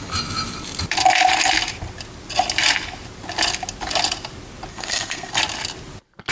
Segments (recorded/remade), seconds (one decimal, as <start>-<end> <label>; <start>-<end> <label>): 0.0-4.7 recorded; 4.7-5.3 remade; 5.3-6.3 recorded